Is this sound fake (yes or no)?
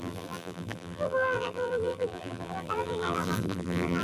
yes